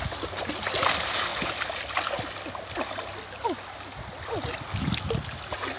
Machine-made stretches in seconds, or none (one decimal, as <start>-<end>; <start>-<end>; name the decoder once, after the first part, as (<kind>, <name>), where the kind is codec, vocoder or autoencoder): none